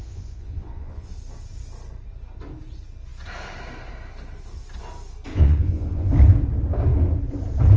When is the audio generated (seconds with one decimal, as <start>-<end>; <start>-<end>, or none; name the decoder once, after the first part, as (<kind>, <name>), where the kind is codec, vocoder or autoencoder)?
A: 0.0-1.1 (vocoder, Vocos); 5.3-6.1